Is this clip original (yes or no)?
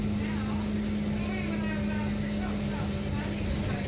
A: yes